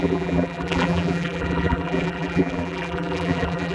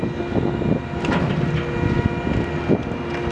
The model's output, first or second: first